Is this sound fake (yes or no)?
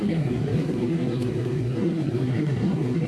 yes